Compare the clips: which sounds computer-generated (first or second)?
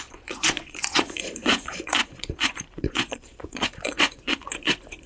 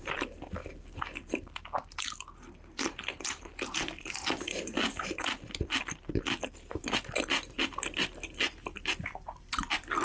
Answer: first